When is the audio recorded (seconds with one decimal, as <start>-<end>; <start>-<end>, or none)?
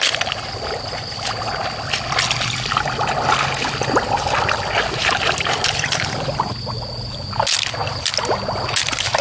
0.0-5.0; 6.3-9.2